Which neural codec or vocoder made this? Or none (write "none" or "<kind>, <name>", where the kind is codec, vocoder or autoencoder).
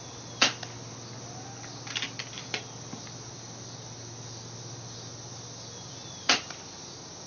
none